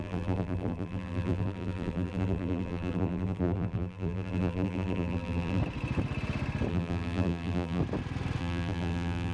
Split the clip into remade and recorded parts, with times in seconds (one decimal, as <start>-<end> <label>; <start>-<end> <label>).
0.0-5.6 remade; 5.6-6.7 recorded; 6.7-7.8 remade; 7.8-8.4 recorded; 8.4-9.3 remade